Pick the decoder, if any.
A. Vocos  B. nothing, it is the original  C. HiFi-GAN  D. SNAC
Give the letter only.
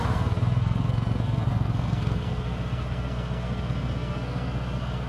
D